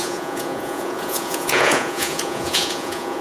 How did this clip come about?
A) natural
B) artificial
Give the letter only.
B